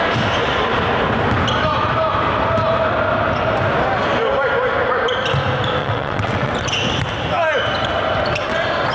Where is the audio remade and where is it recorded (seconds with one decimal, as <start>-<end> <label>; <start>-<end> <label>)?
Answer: 0.0-5.8 recorded; 5.8-6.5 remade; 6.5-8.9 recorded